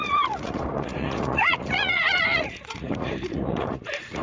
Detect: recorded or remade remade